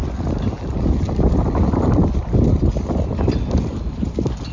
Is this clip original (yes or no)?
yes